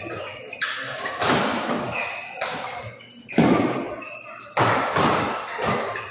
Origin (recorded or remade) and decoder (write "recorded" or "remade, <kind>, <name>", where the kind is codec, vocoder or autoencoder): recorded